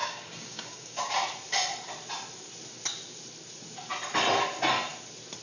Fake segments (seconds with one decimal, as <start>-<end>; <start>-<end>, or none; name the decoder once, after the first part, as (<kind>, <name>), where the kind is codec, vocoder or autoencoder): 0.0-1.0 (codec, DAC)